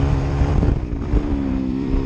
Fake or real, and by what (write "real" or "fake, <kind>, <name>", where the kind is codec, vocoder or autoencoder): fake, vocoder, BigVGAN v2